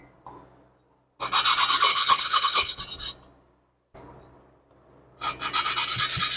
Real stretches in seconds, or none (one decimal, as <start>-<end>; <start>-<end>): 0.0-1.9; 2.8-6.4